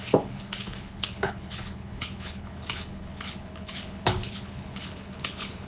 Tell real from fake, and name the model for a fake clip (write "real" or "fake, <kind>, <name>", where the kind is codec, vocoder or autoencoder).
fake, codec, HILCodec